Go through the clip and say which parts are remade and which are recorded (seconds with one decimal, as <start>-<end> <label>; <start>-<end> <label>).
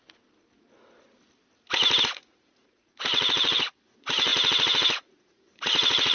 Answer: 0.0-0.4 remade; 0.4-2.0 recorded; 2.0-6.1 remade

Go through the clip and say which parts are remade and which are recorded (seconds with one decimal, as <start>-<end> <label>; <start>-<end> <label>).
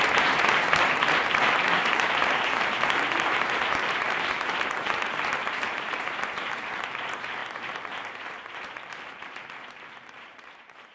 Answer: 0.0-10.9 remade